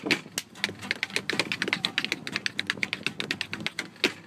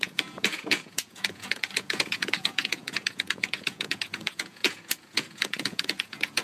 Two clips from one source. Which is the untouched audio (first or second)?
first